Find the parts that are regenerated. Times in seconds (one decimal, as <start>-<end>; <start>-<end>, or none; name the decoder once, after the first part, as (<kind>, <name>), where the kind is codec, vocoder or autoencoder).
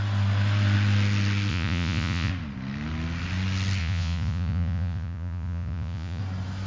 1.5-2.3 (vocoder, Vocos); 3.8-6.2